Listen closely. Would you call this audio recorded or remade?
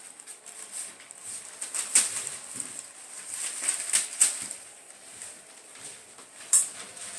recorded